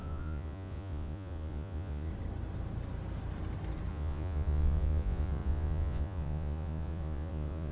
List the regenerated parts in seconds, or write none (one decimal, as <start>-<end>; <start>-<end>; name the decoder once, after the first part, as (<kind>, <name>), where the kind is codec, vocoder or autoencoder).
0.0-2.1 (vocoder, Vocos); 3.9-7.7